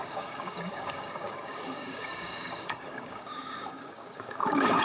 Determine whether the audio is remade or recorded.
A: remade